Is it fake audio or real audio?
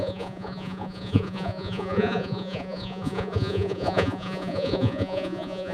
fake